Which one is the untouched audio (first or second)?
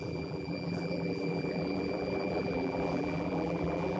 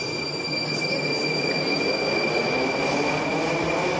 second